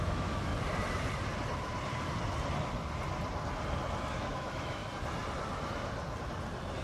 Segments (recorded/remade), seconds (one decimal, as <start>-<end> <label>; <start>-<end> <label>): 0.0-0.5 remade; 0.5-4.1 recorded; 4.1-4.8 remade; 4.8-6.8 recorded